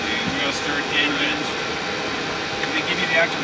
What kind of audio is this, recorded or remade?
recorded